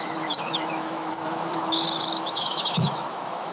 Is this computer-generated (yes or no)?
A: yes